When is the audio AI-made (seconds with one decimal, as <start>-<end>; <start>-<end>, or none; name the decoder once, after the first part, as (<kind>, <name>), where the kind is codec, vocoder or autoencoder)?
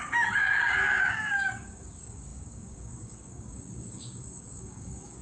0.0-5.2 (codec, DAC)